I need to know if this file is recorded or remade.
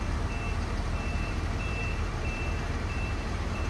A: remade